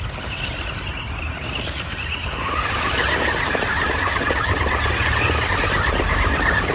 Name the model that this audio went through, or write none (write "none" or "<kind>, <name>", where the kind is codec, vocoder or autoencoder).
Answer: none